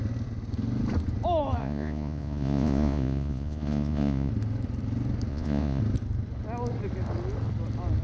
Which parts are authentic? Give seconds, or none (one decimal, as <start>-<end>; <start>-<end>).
0.0-1.6; 4.3-5.3; 5.8-8.0

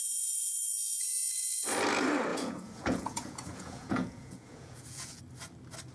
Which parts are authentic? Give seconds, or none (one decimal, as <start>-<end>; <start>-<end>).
0.6-2.3; 5.2-5.9